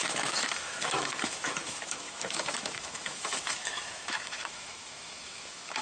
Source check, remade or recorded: remade